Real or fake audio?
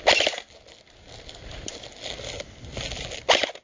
real